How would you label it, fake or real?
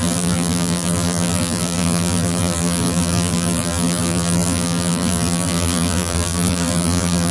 fake